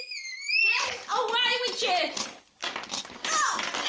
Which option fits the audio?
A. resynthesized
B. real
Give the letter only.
B